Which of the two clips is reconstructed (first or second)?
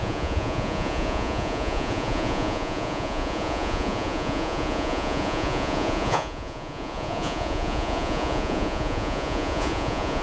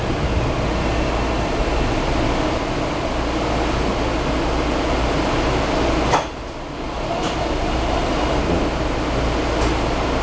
first